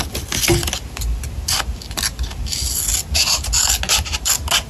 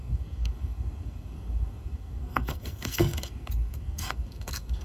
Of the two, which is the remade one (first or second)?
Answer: second